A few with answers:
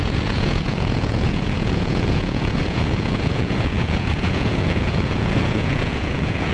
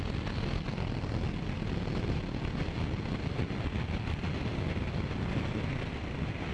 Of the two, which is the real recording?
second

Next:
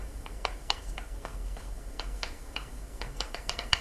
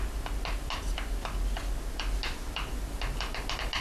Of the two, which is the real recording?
second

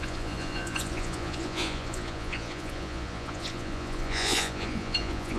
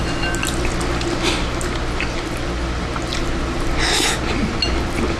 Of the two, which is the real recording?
second